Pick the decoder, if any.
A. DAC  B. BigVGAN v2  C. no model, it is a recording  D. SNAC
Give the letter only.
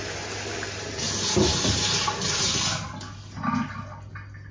C